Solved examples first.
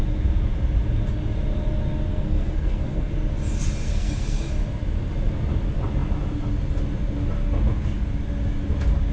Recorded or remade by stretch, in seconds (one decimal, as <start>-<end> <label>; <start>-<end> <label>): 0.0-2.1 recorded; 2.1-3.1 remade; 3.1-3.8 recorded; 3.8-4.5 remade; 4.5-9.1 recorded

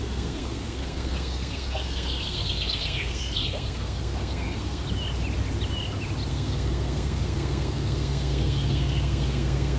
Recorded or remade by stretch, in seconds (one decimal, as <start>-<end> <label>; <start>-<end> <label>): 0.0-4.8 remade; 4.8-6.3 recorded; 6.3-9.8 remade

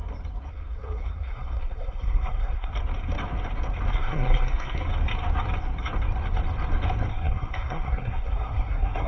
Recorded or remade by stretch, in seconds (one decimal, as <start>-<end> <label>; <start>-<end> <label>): 0.0-0.5 recorded; 0.5-2.7 remade; 2.7-3.9 recorded; 3.9-4.9 remade; 4.9-7.1 recorded; 7.1-9.1 remade

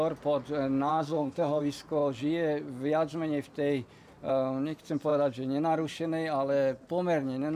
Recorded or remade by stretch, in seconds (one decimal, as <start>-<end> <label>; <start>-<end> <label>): 0.0-0.9 recorded; 0.9-1.6 remade; 1.6-7.6 recorded